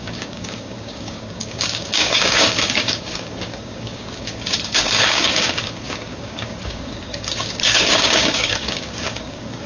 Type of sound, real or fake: fake